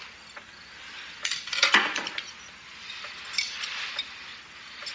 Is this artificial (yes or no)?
no